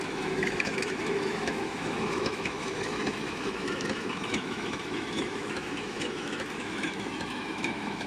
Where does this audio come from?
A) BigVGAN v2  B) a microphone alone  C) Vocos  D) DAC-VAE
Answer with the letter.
D